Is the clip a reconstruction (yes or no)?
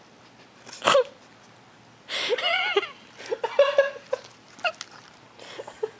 no